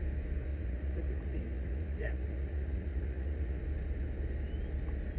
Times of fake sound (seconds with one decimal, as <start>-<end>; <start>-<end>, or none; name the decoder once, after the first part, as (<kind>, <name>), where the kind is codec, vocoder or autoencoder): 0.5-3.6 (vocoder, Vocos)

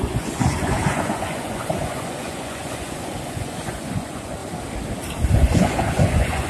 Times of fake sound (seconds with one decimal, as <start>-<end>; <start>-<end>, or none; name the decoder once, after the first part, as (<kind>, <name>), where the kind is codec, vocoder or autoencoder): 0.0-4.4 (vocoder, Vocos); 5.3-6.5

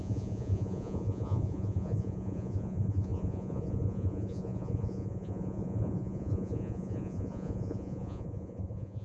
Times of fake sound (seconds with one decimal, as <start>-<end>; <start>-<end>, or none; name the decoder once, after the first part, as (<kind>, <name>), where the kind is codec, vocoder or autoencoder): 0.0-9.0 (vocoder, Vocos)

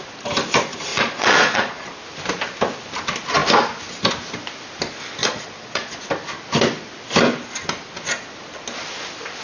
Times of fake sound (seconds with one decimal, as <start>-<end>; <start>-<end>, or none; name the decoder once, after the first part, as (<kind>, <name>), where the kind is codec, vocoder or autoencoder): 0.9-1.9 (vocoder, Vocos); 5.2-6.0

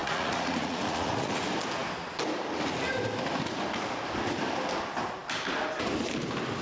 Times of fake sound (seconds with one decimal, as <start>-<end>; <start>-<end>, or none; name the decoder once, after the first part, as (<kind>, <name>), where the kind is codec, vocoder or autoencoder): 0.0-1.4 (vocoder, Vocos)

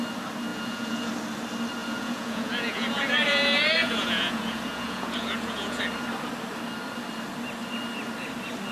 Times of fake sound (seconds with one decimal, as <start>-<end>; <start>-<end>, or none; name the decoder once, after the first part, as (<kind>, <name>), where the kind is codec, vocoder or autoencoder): 0.5-1.1 (vocoder, Vocos); 1.8-5.8

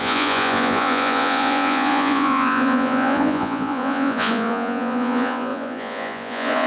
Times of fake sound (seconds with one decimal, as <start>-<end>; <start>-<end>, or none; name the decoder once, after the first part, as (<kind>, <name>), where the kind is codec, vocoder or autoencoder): 0.0-6.7 (vocoder, Vocos)